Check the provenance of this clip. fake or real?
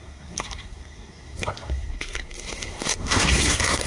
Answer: fake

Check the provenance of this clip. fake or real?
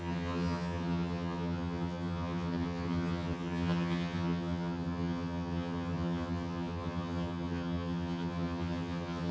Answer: fake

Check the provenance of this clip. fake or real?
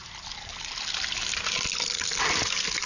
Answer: real